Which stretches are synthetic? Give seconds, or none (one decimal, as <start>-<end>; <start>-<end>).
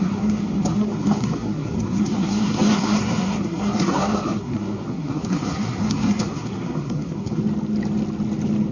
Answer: 0.0-7.4